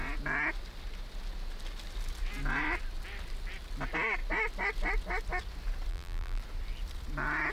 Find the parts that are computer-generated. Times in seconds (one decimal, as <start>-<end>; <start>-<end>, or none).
5.9-6.4